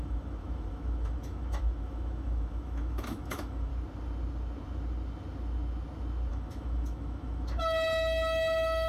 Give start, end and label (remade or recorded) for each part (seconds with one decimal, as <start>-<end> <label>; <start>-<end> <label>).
0.0-3.7 remade; 3.7-6.3 recorded; 6.3-8.9 remade